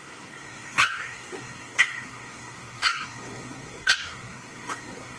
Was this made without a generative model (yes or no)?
no